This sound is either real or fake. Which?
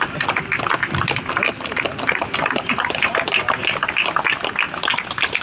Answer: real